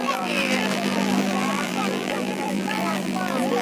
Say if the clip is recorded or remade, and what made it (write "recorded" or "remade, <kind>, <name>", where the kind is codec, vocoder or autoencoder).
remade, vocoder, BigVGAN v2